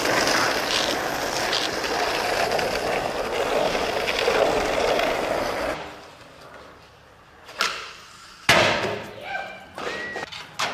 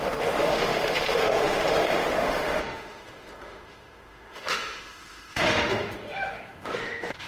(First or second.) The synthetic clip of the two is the second